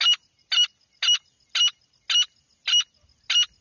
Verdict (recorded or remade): recorded